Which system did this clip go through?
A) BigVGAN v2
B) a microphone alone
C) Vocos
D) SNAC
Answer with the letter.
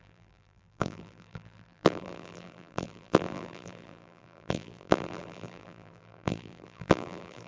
A